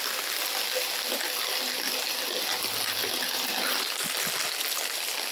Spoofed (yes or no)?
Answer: no